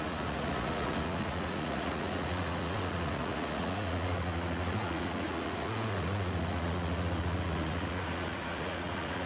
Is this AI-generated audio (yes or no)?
yes